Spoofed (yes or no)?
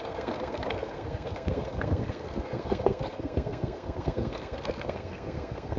yes